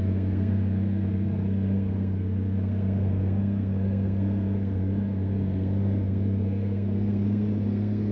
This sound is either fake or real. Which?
fake